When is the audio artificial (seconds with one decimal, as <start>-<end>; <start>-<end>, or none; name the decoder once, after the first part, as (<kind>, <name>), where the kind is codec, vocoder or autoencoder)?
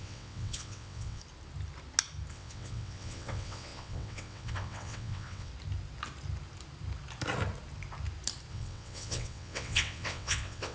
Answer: 0.0-1.2 (vocoder, WaveNeXt); 2.3-5.5; 8.5-10.7